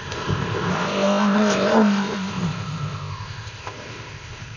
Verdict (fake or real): fake